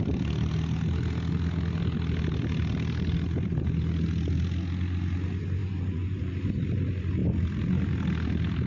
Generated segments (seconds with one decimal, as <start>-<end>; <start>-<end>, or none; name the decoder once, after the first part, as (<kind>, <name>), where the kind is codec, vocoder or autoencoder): 5.6-6.3 (vocoder, Vocos)